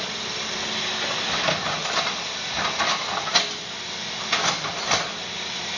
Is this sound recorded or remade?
recorded